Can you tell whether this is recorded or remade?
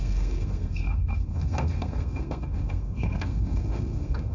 remade